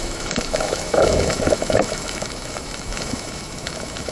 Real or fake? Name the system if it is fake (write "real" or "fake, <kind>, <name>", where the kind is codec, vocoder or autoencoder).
fake, autoencoder, DAC-VAE